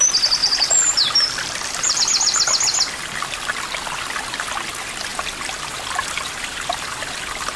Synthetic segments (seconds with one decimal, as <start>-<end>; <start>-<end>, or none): 0.4-2.0; 5.1-7.6